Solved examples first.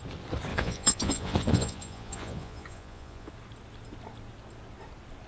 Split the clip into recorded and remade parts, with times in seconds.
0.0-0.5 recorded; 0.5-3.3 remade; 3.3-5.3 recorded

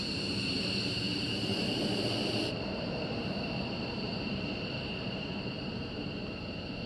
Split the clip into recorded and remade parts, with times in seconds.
0.0-6.9 remade

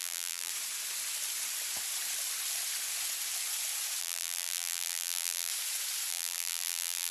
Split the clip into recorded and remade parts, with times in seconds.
0.0-0.5 remade; 0.5-4.0 recorded; 4.0-5.5 remade; 5.5-6.1 recorded; 6.1-7.1 remade

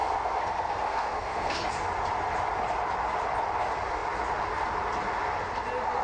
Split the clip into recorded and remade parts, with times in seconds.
0.0-1.6 remade; 1.6-6.0 recorded

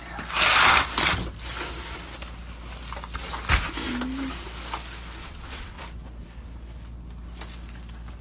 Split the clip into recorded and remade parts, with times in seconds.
0.0-5.2 recorded; 5.2-5.8 remade; 5.8-8.2 recorded

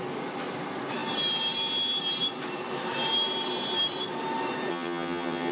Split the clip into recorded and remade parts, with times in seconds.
0.0-4.7 recorded; 4.7-5.5 remade

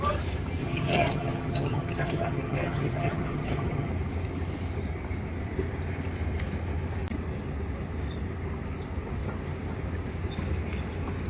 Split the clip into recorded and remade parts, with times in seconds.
0.0-0.6 recorded; 0.6-3.9 remade; 3.9-11.3 recorded

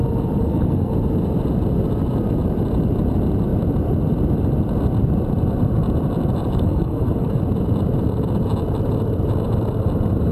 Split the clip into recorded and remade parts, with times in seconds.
0.0-0.4 recorded; 0.4-0.9 remade; 0.9-6.5 recorded; 6.5-7.4 remade; 7.4-10.3 recorded